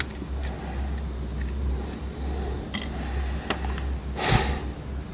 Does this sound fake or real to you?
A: real